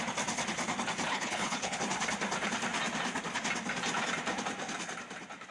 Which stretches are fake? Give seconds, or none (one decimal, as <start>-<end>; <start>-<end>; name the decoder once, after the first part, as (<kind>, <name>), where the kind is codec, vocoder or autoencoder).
1.1-1.8 (codec, HILCodec)